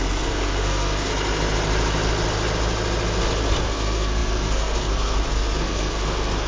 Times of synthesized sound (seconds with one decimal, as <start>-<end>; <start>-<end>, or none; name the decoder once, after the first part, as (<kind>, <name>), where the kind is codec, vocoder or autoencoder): 0.0-1.1 (codec, SNAC); 3.6-6.5